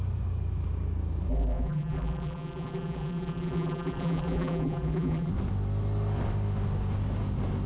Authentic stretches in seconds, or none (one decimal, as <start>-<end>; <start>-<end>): 0.0-1.3; 5.3-7.7